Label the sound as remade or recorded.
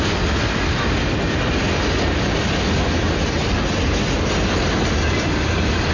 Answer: recorded